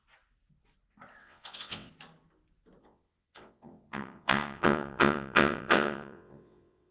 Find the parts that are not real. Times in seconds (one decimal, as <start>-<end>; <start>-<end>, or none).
1.2-1.9; 2.8-6.9